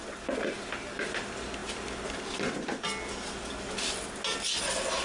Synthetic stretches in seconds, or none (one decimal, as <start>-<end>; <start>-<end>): none